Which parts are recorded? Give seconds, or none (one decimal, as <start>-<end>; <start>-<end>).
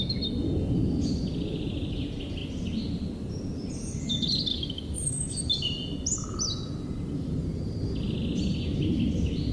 0.0-4.5; 5.4-9.5